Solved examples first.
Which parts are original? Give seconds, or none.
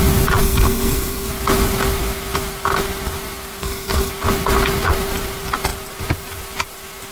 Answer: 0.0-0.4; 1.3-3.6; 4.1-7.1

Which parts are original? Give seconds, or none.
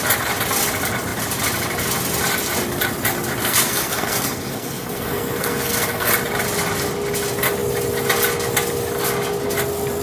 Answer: 0.0-3.4; 6.1-10.0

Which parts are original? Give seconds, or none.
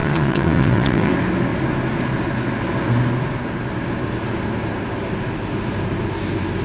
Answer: 1.1-6.6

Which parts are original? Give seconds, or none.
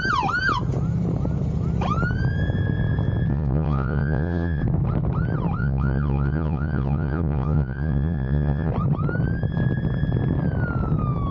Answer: 0.0-3.3; 4.6-5.6; 8.7-11.3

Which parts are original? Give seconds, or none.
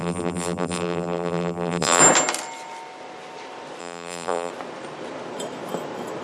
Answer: 2.0-3.8; 4.5-6.2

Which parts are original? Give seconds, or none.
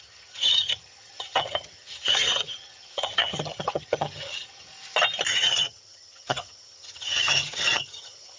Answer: 4.7-5.3